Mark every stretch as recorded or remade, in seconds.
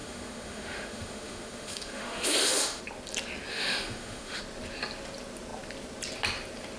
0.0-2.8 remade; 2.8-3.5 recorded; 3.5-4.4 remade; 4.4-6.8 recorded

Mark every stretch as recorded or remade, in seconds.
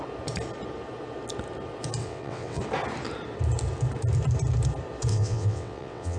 0.0-2.0 recorded; 2.0-2.6 remade; 2.6-5.1 recorded; 5.1-6.2 remade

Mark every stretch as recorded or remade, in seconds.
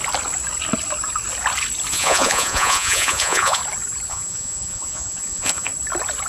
0.0-1.9 recorded; 1.9-3.6 remade; 3.6-4.1 recorded; 4.1-5.7 remade; 5.7-6.3 recorded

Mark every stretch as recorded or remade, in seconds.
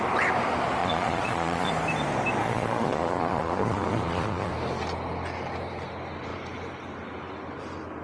0.0-0.8 recorded; 0.8-1.7 remade; 1.7-2.4 recorded; 2.4-4.5 remade; 4.5-8.0 recorded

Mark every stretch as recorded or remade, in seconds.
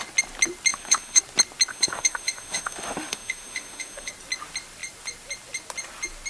0.0-0.7 recorded; 0.7-1.2 remade; 1.2-1.7 recorded; 1.7-4.1 remade; 4.1-6.3 recorded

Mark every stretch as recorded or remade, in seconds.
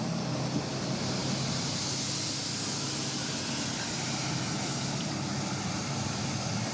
0.0-6.7 recorded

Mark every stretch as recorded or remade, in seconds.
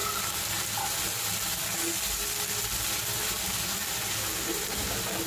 0.0-5.3 recorded